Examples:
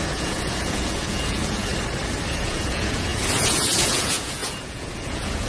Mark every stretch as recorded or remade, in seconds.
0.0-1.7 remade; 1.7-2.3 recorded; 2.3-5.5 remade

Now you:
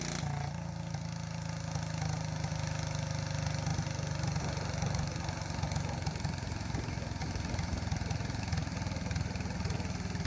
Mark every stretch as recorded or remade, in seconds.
0.0-7.2 recorded; 7.2-8.4 remade; 8.4-10.3 recorded

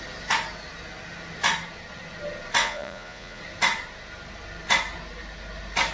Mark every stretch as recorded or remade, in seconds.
0.0-2.6 recorded; 2.6-3.4 remade; 3.4-5.9 recorded

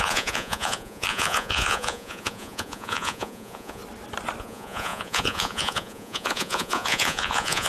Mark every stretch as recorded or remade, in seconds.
0.0-3.8 remade; 3.8-4.4 recorded; 4.4-7.7 remade

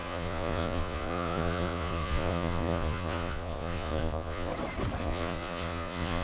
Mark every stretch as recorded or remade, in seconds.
0.0-4.5 remade; 4.5-5.0 recorded; 5.0-6.2 remade